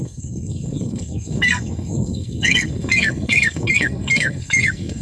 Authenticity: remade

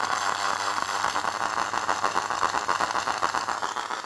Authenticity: recorded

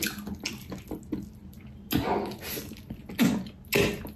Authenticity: recorded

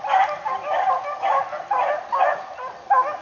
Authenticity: recorded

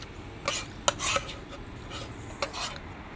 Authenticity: recorded